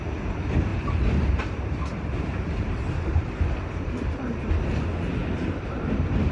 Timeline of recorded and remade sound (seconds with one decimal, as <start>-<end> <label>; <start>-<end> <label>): 0.0-0.7 recorded; 0.7-4.5 remade; 4.5-5.2 recorded; 5.2-6.3 remade